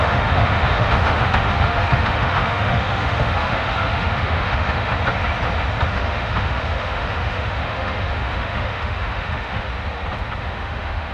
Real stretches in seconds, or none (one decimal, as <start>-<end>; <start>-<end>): 4.9-5.9; 9.7-10.4